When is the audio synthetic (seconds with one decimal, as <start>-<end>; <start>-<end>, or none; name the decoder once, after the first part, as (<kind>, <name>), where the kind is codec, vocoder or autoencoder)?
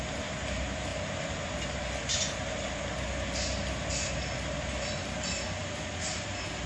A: none